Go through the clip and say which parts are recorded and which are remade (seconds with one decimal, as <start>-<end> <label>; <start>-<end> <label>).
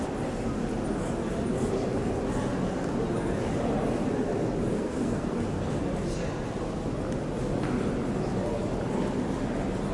0.0-4.7 recorded; 4.7-5.8 remade; 5.8-9.9 recorded